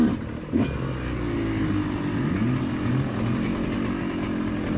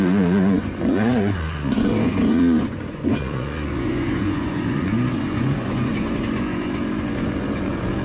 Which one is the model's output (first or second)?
second